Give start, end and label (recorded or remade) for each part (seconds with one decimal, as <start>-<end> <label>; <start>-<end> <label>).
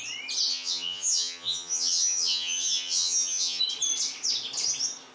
0.0-0.5 recorded; 0.5-3.6 remade; 3.6-5.1 recorded